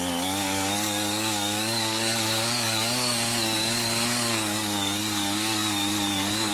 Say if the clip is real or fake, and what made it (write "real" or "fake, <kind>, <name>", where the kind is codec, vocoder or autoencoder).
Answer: fake, codec, DAC